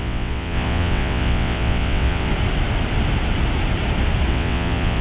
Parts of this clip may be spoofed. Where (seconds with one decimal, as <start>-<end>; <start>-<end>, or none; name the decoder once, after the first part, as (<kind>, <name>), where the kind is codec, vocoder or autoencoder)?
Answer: 0.0-2.3 (vocoder, WaveNeXt); 4.3-5.0